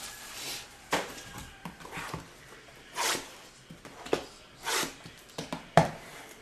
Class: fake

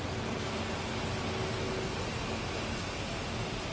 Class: real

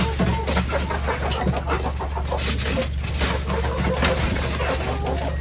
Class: real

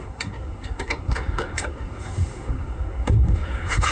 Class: fake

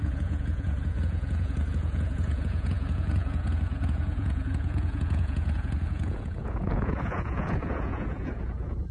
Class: fake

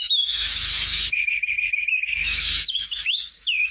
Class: fake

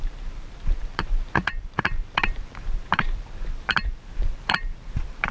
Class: fake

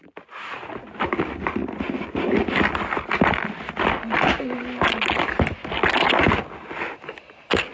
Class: real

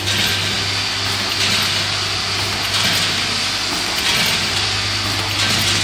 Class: real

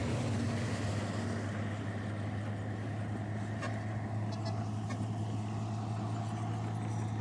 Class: real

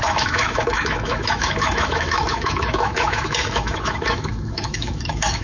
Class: fake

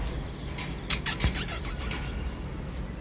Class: real